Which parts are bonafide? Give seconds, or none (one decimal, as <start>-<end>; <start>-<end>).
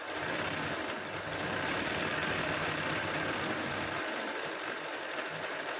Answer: 0.0-5.8